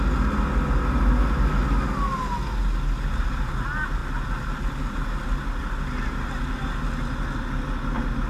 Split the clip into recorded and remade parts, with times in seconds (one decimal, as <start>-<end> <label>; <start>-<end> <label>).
0.0-8.3 recorded